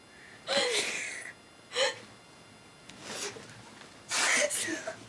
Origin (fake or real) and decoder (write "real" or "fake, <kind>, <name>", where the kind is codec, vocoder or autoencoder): real